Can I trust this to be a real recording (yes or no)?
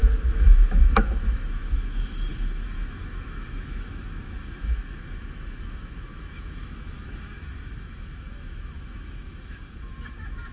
no